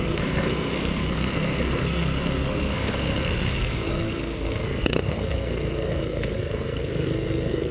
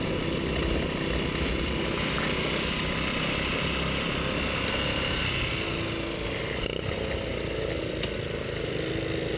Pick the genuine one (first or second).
second